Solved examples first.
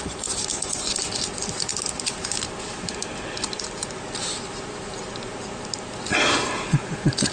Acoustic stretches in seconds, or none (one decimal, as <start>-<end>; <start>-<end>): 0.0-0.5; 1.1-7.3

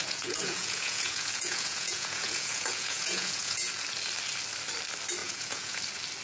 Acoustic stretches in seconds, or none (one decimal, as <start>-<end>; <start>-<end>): 3.7-5.2; 5.8-6.2

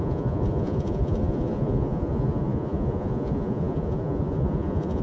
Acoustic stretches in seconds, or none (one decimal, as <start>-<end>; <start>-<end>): none

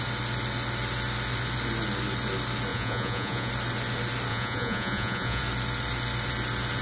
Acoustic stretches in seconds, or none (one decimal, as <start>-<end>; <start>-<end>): 0.0-2.7; 3.5-4.3; 5.4-6.8

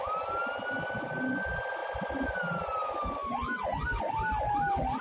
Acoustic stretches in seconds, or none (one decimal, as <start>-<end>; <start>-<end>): 0.0-5.0

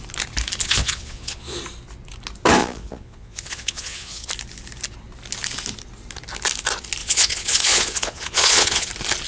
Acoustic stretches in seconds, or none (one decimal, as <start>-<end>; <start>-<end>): 0.0-0.6; 1.6-2.6; 4.3-7.0; 8.9-9.3

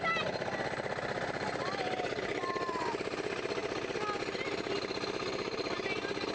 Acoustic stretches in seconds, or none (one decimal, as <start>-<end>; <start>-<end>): 0.0-6.3

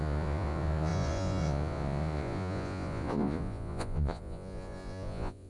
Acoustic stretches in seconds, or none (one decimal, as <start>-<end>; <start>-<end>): none